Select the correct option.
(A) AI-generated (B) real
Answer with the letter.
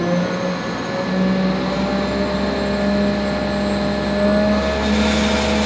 B